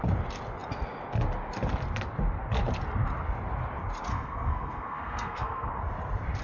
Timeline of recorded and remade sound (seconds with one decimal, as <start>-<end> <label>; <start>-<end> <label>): 0.0-4.1 recorded; 4.1-5.7 remade; 5.7-6.4 recorded